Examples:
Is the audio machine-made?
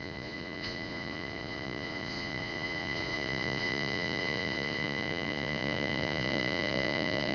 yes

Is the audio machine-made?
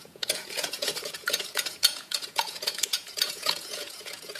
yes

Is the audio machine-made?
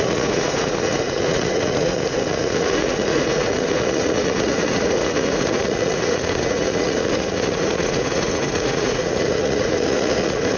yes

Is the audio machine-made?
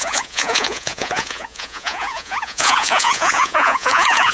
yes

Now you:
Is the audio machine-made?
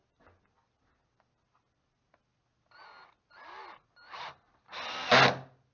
no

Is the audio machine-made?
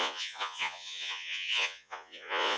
yes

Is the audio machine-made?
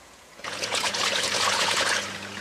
yes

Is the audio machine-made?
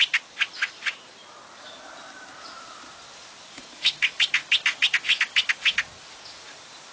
no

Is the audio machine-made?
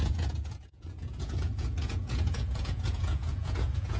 yes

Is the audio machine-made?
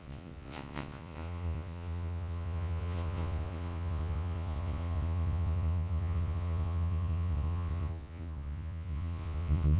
yes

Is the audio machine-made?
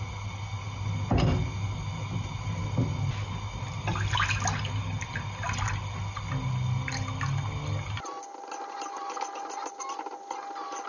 no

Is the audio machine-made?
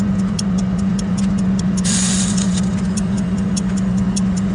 yes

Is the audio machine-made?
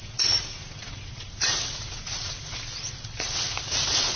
yes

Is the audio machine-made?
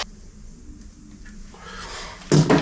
no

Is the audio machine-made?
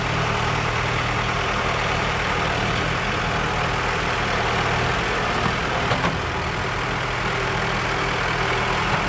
no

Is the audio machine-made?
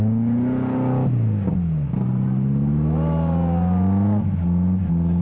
no